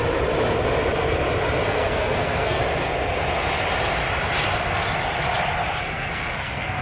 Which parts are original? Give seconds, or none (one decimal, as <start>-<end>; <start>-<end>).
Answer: 0.0-1.6; 2.6-5.8